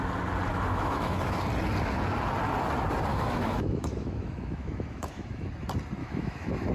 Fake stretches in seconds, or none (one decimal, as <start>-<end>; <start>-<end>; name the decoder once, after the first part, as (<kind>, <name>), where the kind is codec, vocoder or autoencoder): 0.5-1.4 (autoencoder, DAC-VAE); 3.1-5.5; 6.0-6.7